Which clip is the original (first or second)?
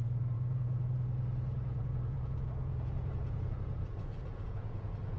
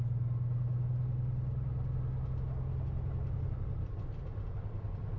second